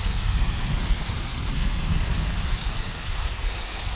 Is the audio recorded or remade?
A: remade